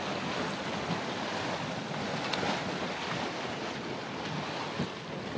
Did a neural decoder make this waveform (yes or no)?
no